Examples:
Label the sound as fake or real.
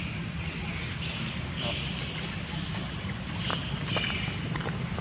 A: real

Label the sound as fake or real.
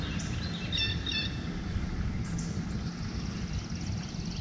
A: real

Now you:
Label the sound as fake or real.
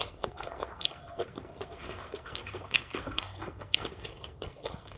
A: fake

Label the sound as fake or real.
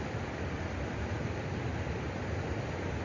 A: real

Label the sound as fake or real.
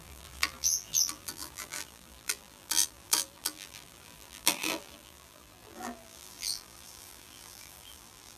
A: fake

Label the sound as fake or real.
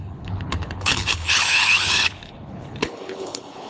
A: fake